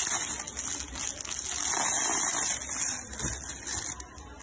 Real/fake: real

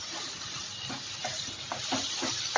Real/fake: real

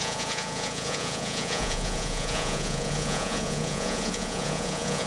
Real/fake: fake